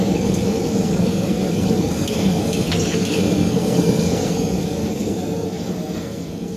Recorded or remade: remade